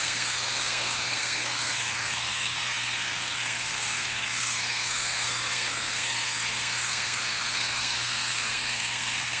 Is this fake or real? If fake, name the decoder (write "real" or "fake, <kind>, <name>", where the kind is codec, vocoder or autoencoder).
fake, codec, SNAC